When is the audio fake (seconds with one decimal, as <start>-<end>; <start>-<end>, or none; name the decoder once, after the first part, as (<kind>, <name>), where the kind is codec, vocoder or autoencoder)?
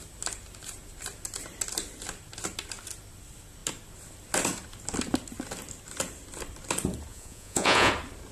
7.1-7.9 (vocoder, Vocos)